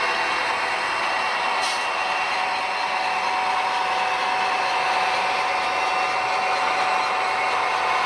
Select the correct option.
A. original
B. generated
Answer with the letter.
A